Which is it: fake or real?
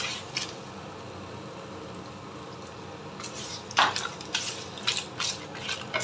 real